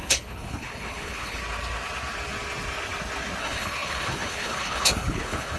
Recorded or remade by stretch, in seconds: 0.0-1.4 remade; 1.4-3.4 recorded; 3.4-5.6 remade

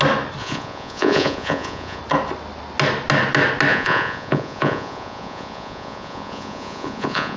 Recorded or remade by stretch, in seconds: 0.0-0.4 recorded; 0.4-2.0 remade; 2.0-3.7 recorded; 3.7-7.4 remade